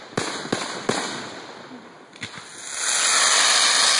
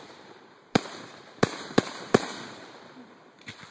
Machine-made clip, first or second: second